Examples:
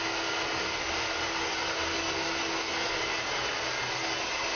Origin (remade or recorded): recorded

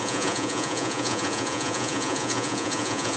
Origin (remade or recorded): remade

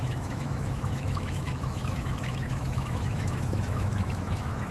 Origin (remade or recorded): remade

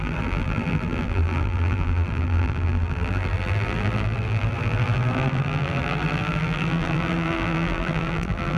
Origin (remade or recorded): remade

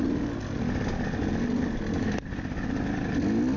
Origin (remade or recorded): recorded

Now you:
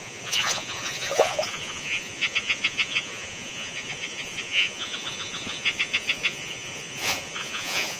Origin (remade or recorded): remade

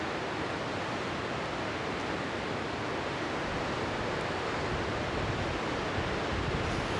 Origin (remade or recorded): recorded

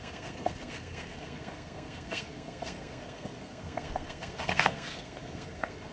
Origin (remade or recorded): remade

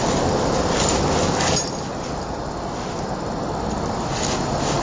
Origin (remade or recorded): recorded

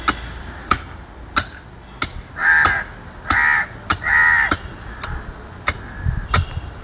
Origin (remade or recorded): recorded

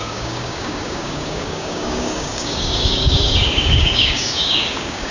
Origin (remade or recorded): remade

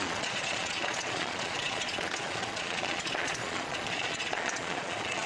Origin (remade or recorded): remade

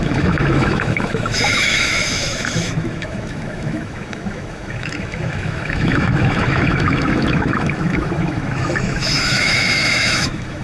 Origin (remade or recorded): remade